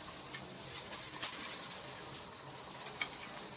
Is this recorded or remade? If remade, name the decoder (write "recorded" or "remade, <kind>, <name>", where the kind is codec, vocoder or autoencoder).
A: recorded